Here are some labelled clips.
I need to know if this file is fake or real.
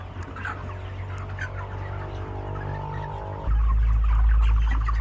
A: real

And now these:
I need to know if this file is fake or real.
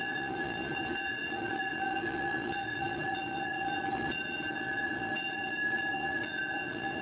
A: fake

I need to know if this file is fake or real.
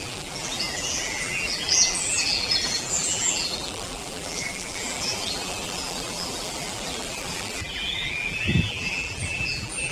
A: fake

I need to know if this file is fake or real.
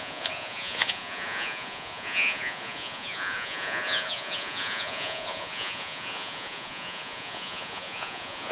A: fake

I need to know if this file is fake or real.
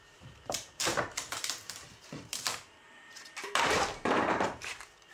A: fake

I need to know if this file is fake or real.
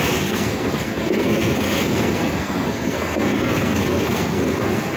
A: fake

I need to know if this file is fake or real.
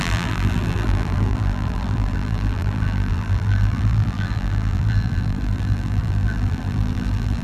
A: fake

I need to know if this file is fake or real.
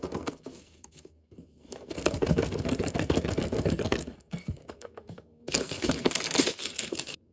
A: fake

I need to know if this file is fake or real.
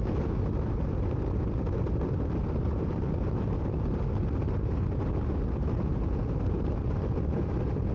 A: real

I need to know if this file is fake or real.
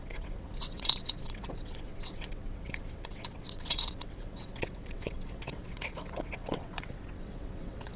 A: fake